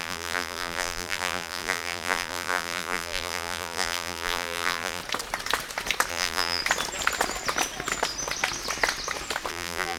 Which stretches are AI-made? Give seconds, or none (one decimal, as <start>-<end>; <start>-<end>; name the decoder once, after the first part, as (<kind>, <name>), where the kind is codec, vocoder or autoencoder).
0.0-5.0 (vocoder, BigVGAN v2); 6.1-6.6; 9.5-10.0